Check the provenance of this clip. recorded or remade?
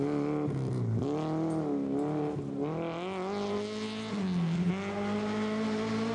recorded